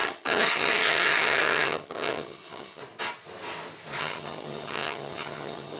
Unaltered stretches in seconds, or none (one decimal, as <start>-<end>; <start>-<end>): 2.8-4.0